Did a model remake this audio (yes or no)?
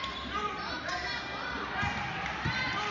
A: no